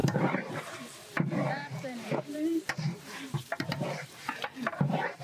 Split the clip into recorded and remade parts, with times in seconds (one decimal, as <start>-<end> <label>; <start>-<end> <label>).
0.0-5.2 remade